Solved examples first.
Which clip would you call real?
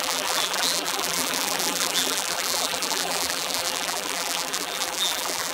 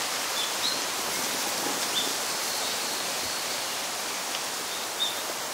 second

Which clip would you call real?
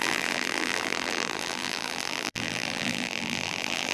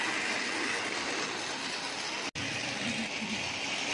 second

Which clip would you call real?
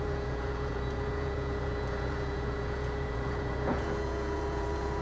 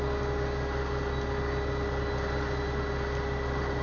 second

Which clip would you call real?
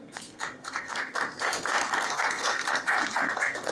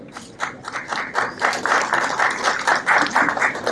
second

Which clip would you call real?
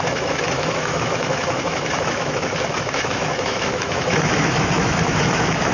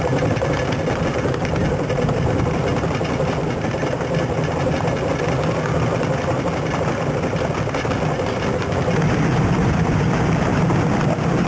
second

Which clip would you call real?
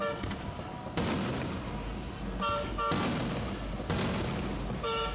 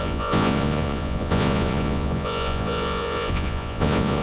first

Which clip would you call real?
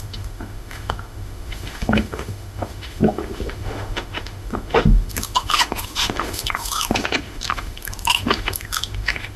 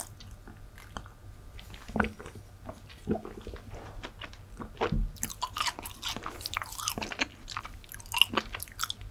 second